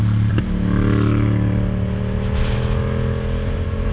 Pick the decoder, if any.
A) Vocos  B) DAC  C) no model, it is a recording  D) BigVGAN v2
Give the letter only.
C